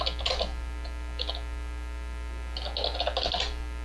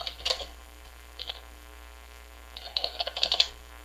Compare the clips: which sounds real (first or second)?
first